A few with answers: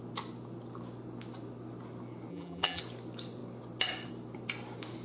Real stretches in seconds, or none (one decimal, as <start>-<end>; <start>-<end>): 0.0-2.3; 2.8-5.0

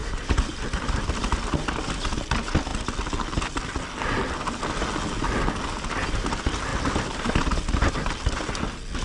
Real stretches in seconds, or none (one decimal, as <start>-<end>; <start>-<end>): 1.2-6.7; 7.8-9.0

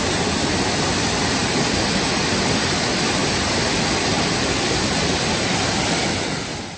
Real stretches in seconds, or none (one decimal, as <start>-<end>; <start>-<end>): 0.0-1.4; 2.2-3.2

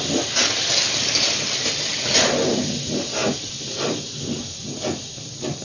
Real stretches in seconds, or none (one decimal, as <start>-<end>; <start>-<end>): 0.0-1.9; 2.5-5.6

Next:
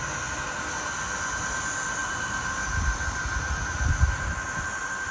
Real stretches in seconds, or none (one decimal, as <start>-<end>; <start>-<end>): 0.0-2.0; 4.3-5.1

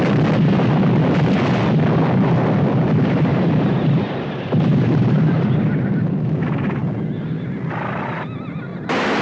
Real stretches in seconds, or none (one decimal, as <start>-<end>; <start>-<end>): 0.0-3.3; 5.5-9.2

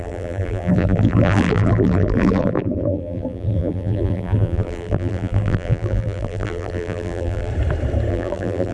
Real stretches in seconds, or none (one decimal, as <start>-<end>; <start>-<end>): 7.5-8.1